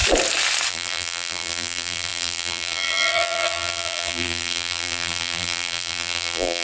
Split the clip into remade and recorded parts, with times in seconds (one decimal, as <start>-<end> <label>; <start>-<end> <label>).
0.0-0.7 recorded; 0.7-6.6 remade